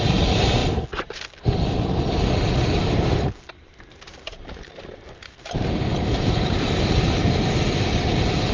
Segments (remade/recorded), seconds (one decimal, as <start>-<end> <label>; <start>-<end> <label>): 0.0-0.6 remade; 0.6-2.5 recorded; 2.5-8.5 remade